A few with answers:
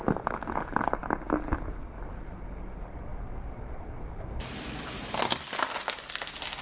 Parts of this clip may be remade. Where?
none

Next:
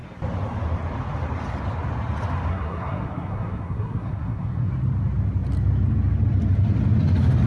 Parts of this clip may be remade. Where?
2.5-4.7 (codec, SNAC)